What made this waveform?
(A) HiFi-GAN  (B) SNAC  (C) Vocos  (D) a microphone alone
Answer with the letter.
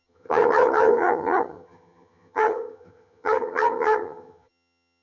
A